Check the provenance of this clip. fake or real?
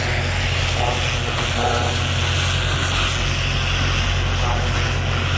real